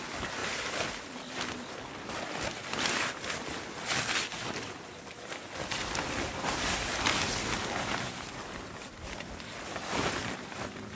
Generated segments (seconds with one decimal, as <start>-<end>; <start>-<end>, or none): none